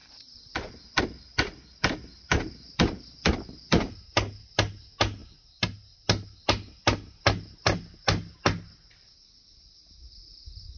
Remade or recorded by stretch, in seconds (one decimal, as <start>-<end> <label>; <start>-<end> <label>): 0.0-1.0 remade; 1.0-1.8 recorded; 1.8-3.3 remade; 3.3-10.8 recorded

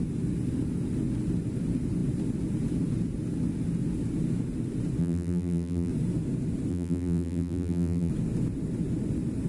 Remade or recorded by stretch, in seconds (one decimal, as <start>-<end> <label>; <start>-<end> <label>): 0.0-5.0 recorded; 5.0-5.9 remade; 5.9-6.7 recorded; 6.7-8.1 remade; 8.1-9.5 recorded

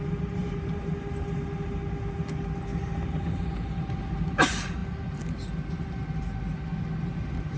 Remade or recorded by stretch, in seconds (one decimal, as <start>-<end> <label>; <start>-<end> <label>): 0.0-0.4 recorded; 0.4-0.9 remade; 0.9-2.7 recorded; 2.7-3.8 remade; 3.8-7.6 recorded

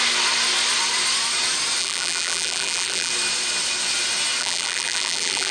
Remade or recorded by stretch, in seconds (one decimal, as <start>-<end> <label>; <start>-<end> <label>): 0.0-1.8 recorded; 1.8-3.1 remade; 3.1-4.4 recorded; 4.4-5.5 remade

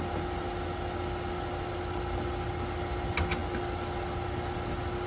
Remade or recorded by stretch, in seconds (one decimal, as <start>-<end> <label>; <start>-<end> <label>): 0.0-5.1 recorded

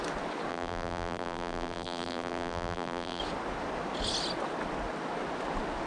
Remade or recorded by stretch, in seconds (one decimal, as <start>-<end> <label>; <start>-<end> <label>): 0.0-0.5 recorded; 0.5-3.2 remade; 3.2-5.9 recorded

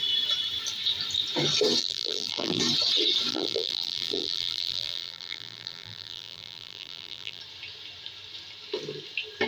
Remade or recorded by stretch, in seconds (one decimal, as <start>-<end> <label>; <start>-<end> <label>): 0.0-1.8 recorded; 1.8-2.6 remade; 2.6-3.3 recorded; 3.3-7.4 remade; 7.4-9.5 recorded